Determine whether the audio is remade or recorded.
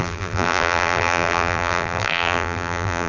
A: remade